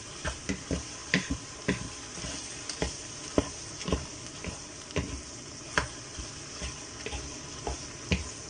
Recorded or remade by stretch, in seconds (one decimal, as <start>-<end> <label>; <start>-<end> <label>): 0.0-8.5 recorded